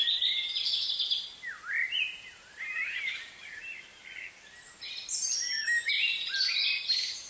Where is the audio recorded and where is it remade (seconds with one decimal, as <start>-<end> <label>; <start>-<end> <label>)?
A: 0.0-3.6 remade; 3.6-6.0 recorded; 6.0-7.3 remade